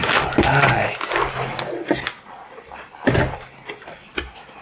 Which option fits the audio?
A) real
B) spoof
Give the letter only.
A